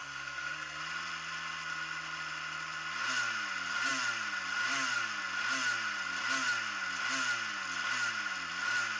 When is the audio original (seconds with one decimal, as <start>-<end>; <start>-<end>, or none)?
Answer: 0.8-9.0